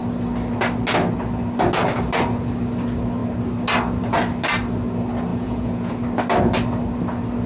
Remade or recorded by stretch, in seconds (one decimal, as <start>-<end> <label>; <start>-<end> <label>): 0.0-5.3 recorded; 5.3-5.9 remade; 5.9-7.5 recorded